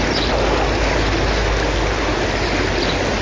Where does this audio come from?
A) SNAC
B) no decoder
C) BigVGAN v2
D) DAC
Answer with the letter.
B